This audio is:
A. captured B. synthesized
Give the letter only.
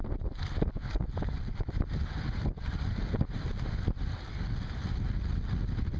A